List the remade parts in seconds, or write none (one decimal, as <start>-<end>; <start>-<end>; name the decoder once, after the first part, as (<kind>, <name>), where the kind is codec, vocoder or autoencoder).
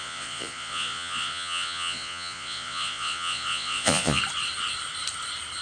0.0-4.2 (vocoder, Vocos)